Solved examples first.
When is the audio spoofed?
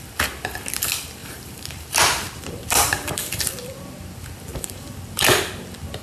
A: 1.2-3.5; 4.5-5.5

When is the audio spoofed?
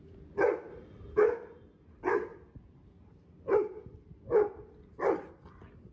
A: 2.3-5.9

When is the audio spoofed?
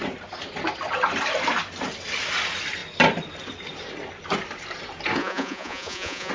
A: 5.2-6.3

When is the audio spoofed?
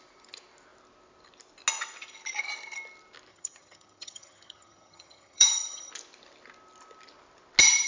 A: 3.3-5.9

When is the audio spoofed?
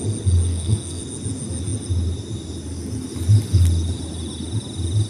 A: 0.5-1.0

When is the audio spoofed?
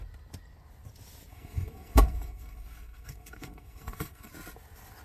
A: 1.3-4.3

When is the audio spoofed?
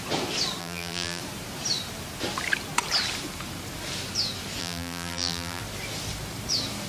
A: 0.6-1.2; 4.6-5.6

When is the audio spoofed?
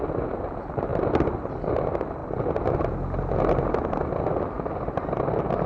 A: none